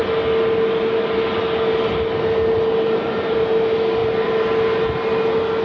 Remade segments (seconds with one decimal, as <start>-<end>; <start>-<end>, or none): none